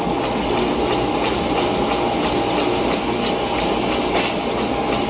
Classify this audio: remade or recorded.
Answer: recorded